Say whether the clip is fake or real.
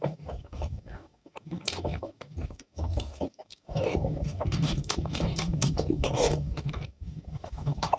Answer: fake